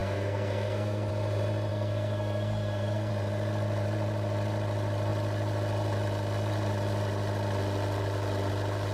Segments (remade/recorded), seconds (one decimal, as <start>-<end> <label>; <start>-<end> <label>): 0.0-1.1 remade; 1.1-1.7 recorded; 1.7-3.1 remade; 3.1-8.9 recorded

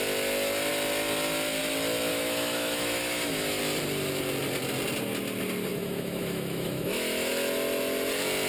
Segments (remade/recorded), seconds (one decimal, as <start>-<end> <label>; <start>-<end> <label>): 0.0-2.1 recorded; 2.1-3.6 remade; 3.6-5.7 recorded; 5.7-7.3 remade; 7.3-8.5 recorded

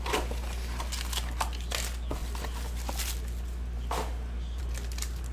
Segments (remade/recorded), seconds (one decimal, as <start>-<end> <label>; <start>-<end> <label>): 0.0-5.3 recorded